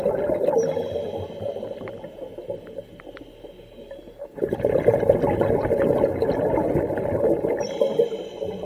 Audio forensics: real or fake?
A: real